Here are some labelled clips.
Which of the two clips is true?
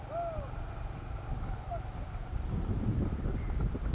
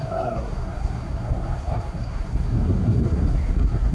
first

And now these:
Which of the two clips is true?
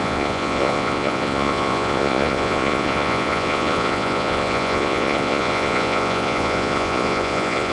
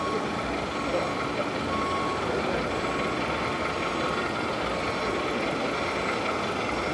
second